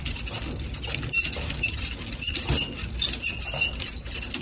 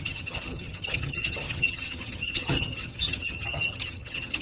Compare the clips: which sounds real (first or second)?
first